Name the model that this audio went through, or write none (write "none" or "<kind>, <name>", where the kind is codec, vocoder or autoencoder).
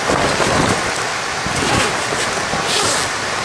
none